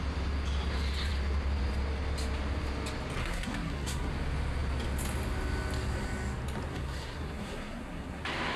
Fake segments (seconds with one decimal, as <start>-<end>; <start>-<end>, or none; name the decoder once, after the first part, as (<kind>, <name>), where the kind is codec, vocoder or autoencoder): 3.2-4.1 (codec, SNAC); 6.7-8.2